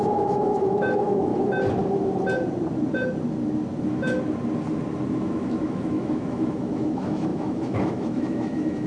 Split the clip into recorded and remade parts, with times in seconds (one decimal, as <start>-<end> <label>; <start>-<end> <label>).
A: 0.0-1.3 remade; 1.3-5.1 recorded; 5.1-8.9 remade